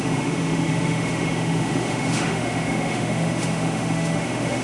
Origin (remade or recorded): remade